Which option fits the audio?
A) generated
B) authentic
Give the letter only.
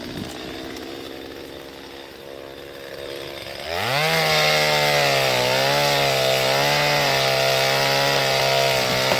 B